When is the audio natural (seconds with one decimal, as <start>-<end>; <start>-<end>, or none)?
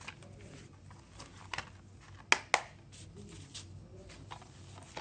0.0-5.0